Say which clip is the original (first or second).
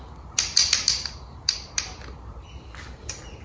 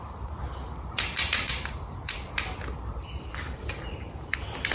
first